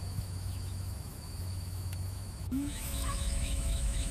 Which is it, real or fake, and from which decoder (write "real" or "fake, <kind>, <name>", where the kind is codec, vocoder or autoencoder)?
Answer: fake, autoencoder, DAC-VAE